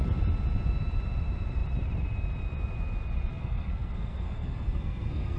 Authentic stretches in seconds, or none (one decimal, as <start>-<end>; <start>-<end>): 0.0-3.3